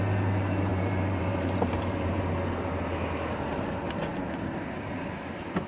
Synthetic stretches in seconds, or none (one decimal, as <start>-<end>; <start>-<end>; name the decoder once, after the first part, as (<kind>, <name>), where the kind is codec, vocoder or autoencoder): 0.7-2.2 (vocoder, BigVGAN v2)